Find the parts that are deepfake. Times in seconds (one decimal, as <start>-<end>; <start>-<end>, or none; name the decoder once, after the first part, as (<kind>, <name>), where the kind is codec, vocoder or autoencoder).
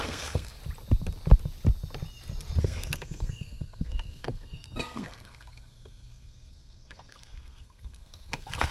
0.0-0.6 (codec, SNAC); 2.6-8.7